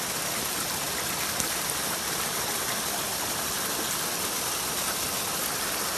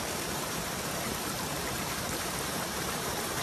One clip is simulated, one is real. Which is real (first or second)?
first